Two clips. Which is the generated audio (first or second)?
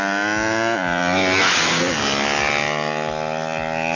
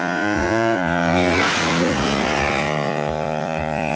second